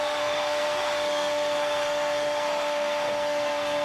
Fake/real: fake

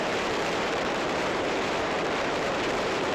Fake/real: fake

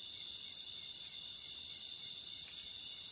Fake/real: real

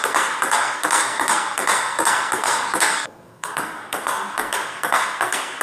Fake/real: fake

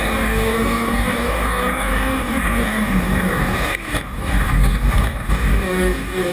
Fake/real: fake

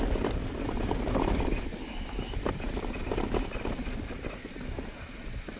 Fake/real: real